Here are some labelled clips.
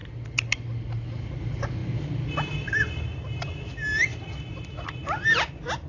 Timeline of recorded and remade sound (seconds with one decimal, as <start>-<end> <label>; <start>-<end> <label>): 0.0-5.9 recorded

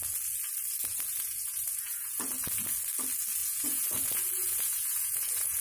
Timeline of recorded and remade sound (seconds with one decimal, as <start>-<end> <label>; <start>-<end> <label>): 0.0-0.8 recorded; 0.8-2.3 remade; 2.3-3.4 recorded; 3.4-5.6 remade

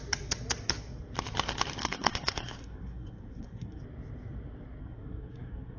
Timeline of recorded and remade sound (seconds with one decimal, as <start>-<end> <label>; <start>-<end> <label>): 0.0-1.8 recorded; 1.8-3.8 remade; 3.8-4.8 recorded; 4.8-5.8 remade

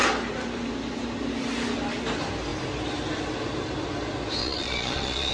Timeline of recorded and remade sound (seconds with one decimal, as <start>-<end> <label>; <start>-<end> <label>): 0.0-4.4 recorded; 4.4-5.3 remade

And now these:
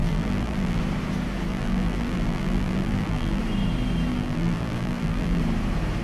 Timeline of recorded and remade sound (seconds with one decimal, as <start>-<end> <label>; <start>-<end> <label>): 0.0-0.8 remade; 0.8-1.5 recorded; 1.5-3.4 remade; 3.4-4.1 recorded; 4.1-5.4 remade; 5.4-6.0 recorded

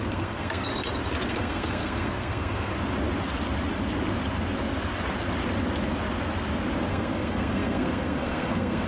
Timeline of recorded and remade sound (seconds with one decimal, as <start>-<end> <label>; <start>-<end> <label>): 0.0-0.7 remade; 0.7-1.3 recorded; 1.3-2.7 remade; 2.7-6.9 recorded; 6.9-8.9 remade